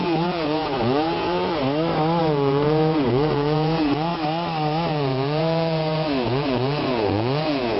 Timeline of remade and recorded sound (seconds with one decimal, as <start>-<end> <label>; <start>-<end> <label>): 0.0-1.6 remade; 1.6-2.2 recorded; 2.2-4.1 remade; 4.1-4.9 recorded; 4.9-7.8 remade